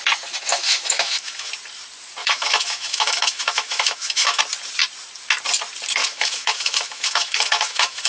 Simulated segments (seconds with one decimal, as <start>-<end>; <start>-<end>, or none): 0.5-1.5; 2.2-4.4; 6.0-8.1